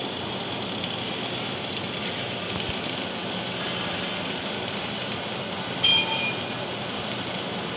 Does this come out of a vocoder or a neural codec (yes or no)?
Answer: no